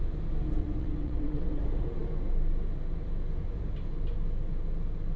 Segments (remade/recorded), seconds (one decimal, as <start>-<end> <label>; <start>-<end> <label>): 0.0-0.6 recorded; 0.6-1.6 remade; 1.6-5.2 recorded